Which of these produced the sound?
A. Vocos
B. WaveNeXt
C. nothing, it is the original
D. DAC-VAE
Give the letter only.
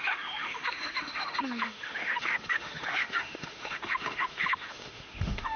D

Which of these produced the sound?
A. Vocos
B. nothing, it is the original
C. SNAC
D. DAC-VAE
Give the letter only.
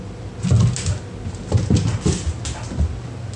B